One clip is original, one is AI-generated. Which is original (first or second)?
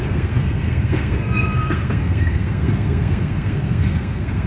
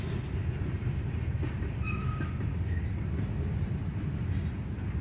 second